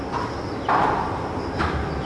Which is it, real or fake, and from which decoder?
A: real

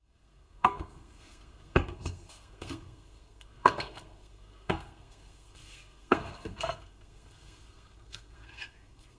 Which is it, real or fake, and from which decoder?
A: fake, codec, SNAC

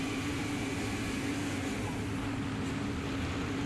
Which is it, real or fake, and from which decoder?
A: real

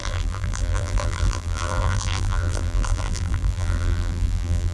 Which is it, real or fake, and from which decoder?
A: fake, vocoder, BigVGAN v2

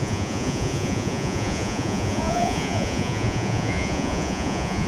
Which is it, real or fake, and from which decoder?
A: fake, vocoder, Vocos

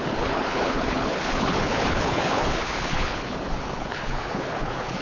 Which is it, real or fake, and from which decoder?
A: fake, codec, HILCodec